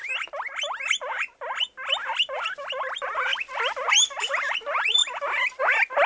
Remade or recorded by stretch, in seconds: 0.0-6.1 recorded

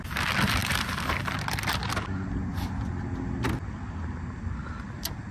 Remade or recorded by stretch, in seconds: 0.0-5.3 recorded